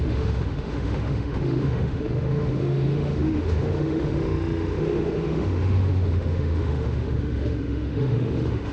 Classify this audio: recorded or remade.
remade